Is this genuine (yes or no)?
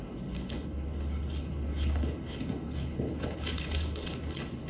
no